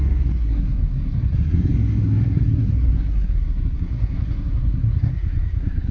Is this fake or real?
fake